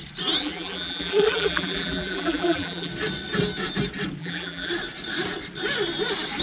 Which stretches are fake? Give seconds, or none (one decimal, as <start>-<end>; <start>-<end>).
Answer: 0.4-2.9; 4.2-4.7